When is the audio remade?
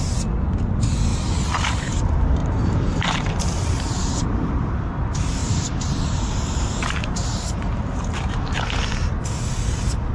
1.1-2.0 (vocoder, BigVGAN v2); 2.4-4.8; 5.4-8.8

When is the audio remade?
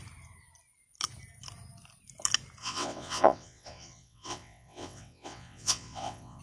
2.6-6.4 (vocoder, WaveNeXt)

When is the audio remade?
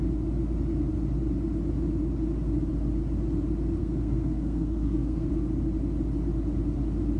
3.8-5.3 (codec, SNAC)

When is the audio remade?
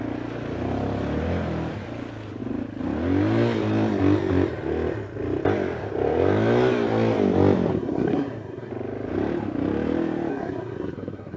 7.7-8.7 (codec, SNAC); 10.3-11.4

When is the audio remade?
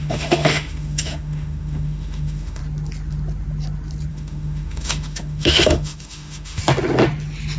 0.0-2.6 (autoencoder, DAC-VAE); 4.1-6.6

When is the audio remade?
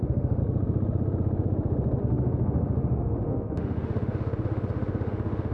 0.0-0.4 (autoencoder, DAC-VAE); 2.0-5.5